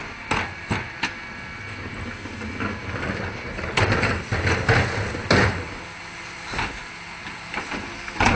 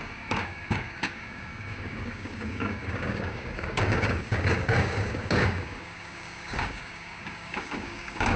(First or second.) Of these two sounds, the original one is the first